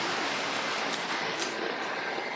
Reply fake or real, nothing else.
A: real